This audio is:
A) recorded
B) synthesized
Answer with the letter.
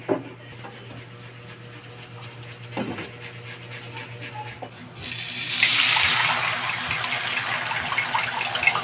A